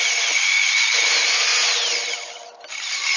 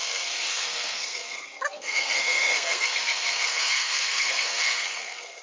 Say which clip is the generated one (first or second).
second